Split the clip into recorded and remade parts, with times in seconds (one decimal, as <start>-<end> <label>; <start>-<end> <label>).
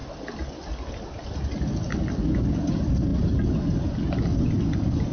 0.0-5.1 recorded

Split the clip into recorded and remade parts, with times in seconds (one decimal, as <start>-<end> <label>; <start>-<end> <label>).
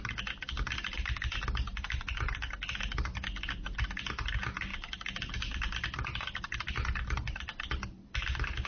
0.0-8.7 recorded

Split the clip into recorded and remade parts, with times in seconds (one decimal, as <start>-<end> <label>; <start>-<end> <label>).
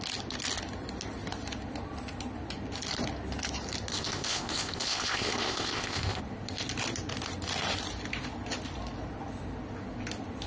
0.0-3.9 recorded; 3.9-6.2 remade; 6.2-10.5 recorded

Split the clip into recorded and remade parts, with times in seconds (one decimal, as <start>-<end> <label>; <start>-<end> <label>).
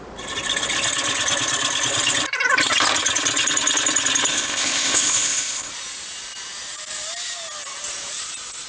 0.0-4.3 recorded; 4.3-5.7 remade; 5.7-8.7 recorded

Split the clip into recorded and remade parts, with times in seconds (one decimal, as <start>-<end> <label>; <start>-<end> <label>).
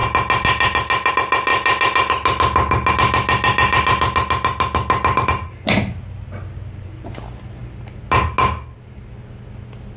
0.0-10.0 recorded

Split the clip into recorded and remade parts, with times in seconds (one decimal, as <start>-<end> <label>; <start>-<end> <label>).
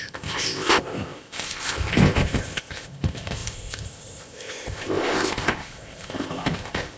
0.0-7.0 remade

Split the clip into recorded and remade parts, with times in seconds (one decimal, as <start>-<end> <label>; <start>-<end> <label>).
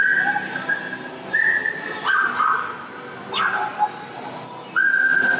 0.0-5.4 recorded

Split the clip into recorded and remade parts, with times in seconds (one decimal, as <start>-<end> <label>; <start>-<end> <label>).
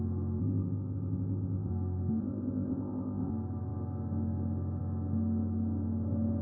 0.0-0.4 recorded; 0.4-1.7 remade; 1.7-2.2 recorded; 2.2-3.3 remade; 3.3-6.4 recorded